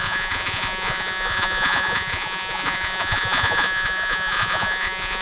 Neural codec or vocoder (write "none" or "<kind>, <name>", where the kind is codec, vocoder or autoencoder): vocoder, Vocos